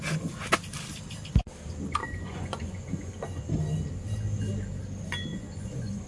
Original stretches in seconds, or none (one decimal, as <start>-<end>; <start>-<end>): 0.0-2.0; 3.4-5.3